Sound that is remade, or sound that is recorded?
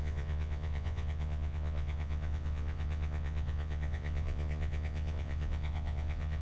remade